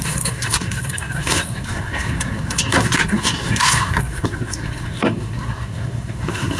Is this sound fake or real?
fake